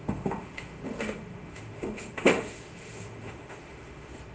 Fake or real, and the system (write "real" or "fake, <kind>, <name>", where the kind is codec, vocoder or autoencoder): fake, autoencoder, DAC-VAE